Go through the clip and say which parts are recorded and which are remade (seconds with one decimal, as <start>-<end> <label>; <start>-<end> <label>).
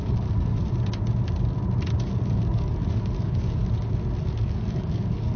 0.0-0.5 remade; 0.5-2.3 recorded; 2.3-3.6 remade; 3.6-4.2 recorded; 4.2-5.4 remade